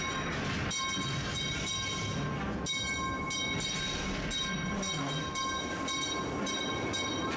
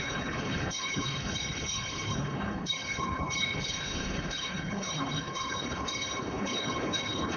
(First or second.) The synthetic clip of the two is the second